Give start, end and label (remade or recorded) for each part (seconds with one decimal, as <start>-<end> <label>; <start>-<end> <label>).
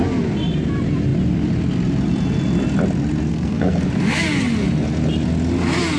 0.0-3.3 recorded; 3.3-3.8 remade; 3.8-6.0 recorded